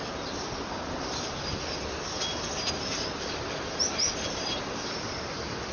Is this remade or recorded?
recorded